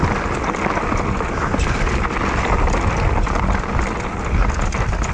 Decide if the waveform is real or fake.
real